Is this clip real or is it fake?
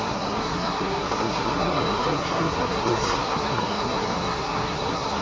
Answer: fake